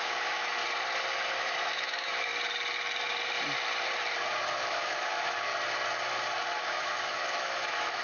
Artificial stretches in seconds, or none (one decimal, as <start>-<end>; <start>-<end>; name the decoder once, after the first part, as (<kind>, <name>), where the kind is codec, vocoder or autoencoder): 0.0-0.6 (autoencoder, DAC-VAE); 1.4-2.3; 4.4-5.5; 6.6-8.0